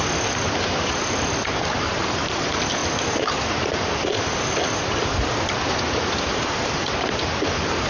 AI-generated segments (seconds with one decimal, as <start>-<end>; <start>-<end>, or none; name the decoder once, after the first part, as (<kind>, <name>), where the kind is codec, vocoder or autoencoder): none